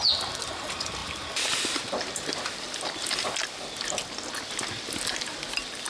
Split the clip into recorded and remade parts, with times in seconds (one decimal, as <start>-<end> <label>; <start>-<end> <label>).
0.0-5.9 recorded